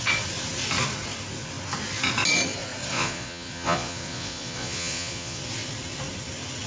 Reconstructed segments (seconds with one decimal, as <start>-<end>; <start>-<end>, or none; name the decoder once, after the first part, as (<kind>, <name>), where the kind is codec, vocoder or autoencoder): 2.9-5.4 (vocoder, Vocos)